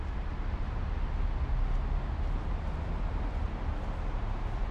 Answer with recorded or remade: recorded